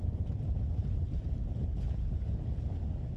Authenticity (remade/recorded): recorded